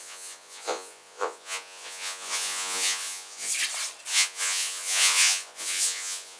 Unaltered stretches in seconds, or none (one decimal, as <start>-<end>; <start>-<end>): 3.5-4.1